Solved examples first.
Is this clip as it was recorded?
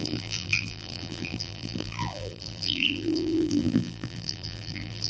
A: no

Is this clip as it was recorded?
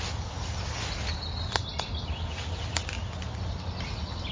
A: yes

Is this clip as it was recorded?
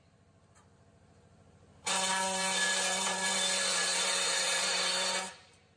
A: no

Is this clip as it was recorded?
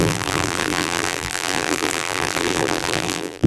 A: no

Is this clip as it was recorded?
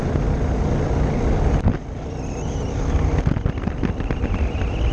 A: yes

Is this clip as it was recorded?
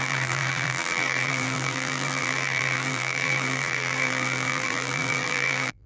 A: no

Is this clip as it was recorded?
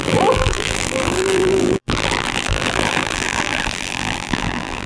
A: no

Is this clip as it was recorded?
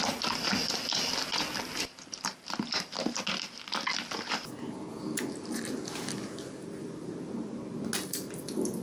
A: yes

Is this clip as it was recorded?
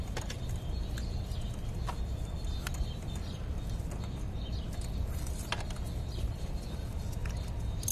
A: yes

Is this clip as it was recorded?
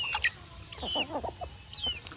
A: yes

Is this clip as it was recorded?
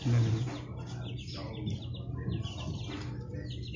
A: yes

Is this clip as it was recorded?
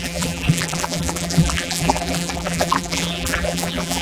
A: no